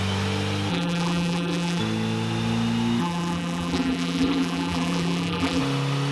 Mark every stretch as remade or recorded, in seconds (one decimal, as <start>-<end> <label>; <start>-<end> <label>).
0.0-0.7 recorded; 0.7-1.8 remade; 1.8-3.0 recorded; 3.0-5.6 remade; 5.6-6.1 recorded